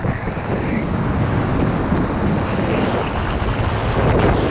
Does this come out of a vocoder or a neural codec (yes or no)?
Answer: no